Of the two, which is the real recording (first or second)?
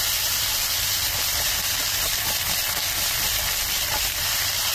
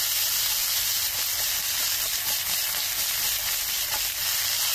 second